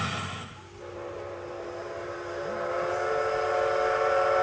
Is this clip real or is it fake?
real